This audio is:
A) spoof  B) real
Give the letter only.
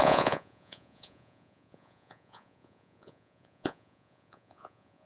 A